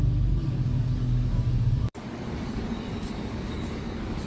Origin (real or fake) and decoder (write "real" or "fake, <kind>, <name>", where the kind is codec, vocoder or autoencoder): fake, codec, DAC